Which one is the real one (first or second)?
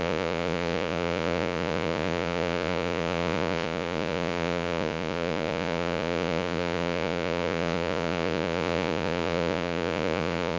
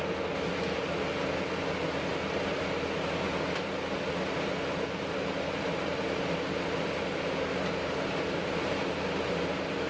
second